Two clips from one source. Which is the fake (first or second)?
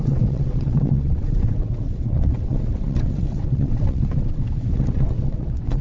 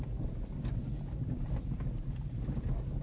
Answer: first